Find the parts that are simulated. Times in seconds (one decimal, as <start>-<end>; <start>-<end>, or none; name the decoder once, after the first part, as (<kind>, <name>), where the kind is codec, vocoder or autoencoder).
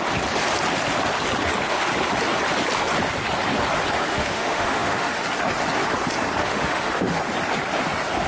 4.1-5.2 (autoencoder, DAC-VAE); 6.4-7.2